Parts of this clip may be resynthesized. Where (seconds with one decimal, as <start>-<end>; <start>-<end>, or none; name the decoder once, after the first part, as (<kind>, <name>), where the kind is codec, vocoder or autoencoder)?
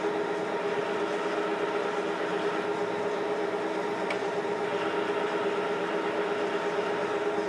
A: none